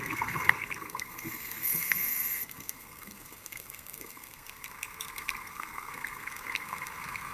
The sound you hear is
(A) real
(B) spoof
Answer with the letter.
B